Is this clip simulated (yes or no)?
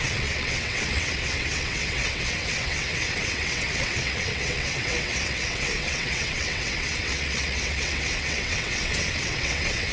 yes